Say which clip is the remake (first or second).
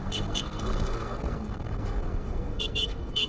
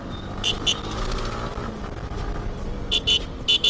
first